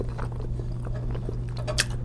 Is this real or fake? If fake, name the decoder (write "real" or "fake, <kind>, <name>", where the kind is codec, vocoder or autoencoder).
real